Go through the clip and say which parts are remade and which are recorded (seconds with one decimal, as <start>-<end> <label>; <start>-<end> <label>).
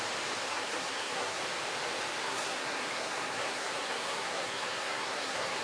0.0-0.5 recorded; 0.5-1.4 remade; 1.4-2.2 recorded; 2.2-5.6 remade